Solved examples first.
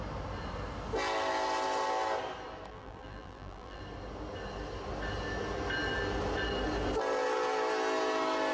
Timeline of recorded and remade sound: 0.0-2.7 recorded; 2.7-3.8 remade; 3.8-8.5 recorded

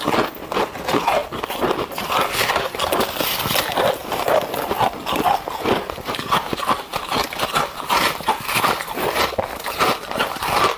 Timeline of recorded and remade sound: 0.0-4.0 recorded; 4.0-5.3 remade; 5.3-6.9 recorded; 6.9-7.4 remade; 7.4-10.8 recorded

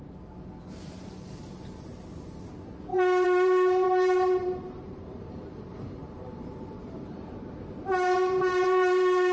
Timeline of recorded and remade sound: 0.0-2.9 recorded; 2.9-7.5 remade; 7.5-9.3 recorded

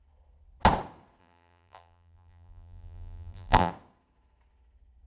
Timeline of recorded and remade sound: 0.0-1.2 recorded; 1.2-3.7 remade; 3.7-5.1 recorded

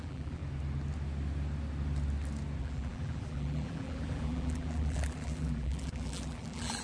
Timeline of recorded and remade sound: 0.0-0.4 remade; 0.4-2.6 recorded; 2.6-6.8 remade

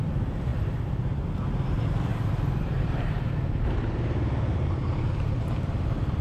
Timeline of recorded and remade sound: 0.0-0.5 recorded; 0.5-1.3 remade; 1.3-2.1 recorded; 2.1-5.4 remade; 5.4-6.2 recorded